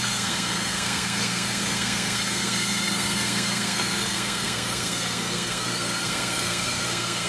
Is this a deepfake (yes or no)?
yes